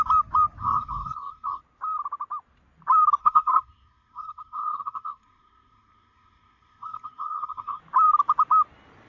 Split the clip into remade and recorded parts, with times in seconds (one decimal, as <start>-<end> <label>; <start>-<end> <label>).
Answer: 0.0-0.6 recorded; 0.6-1.6 remade; 1.6-3.2 recorded; 3.2-7.8 remade; 7.8-9.1 recorded